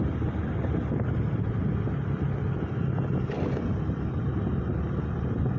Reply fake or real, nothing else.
real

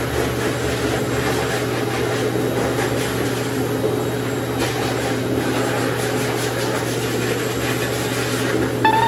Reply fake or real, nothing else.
real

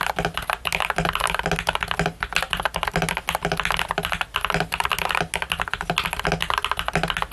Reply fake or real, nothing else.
real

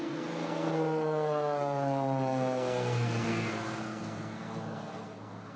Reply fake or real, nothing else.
fake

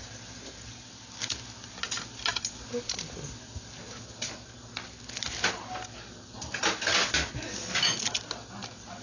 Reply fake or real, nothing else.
real